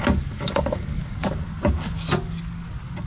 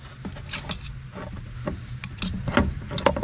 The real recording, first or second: second